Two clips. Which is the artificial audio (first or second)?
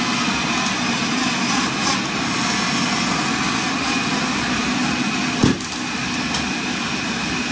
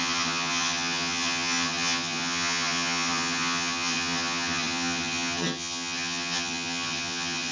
second